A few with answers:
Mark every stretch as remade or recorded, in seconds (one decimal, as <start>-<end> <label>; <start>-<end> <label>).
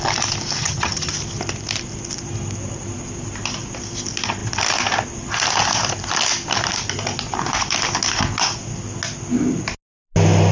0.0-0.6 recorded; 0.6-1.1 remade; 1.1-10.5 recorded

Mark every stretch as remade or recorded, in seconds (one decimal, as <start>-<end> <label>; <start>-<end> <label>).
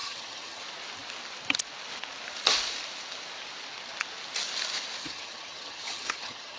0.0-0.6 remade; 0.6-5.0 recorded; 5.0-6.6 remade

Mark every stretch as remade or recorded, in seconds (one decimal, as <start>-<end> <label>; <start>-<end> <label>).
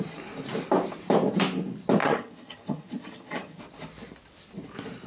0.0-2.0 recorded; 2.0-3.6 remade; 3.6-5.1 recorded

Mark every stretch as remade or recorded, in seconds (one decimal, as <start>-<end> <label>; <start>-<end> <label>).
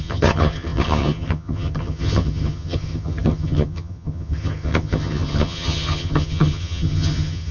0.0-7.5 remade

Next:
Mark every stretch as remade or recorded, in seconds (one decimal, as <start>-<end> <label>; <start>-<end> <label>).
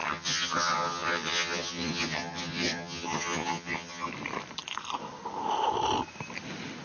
0.0-4.1 remade; 4.1-6.8 recorded